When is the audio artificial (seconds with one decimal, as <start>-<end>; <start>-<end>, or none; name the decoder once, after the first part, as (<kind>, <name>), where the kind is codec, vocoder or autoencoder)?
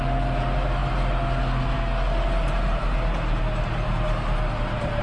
none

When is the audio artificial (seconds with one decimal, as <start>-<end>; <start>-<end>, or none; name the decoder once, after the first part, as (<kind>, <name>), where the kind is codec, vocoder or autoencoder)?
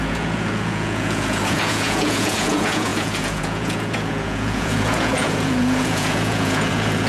0.0-7.1 (vocoder, Vocos)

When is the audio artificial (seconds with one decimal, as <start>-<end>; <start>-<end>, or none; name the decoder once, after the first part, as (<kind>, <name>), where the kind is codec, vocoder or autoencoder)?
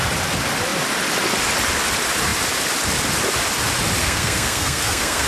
4.0-5.3 (codec, SNAC)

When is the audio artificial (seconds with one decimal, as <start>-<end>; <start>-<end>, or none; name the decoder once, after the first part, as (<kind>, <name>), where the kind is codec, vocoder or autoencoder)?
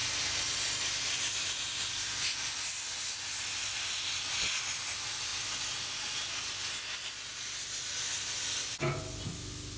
none